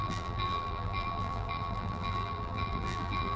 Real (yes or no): no